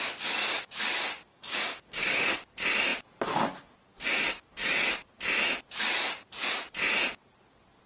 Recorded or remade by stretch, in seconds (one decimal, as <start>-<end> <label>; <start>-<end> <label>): 0.0-1.3 recorded; 1.3-2.2 remade; 2.2-7.9 recorded